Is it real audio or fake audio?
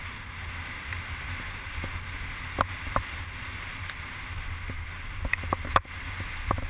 real